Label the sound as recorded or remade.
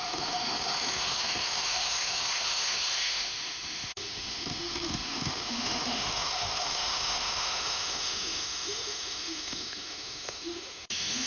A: remade